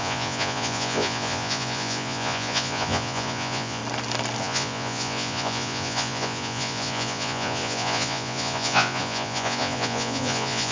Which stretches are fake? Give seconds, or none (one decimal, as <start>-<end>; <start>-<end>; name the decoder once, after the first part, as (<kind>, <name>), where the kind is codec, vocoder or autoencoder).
0.0-3.8 (vocoder, Vocos); 4.4-10.7